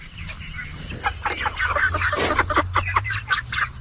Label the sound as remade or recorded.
recorded